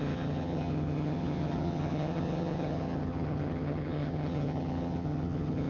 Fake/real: fake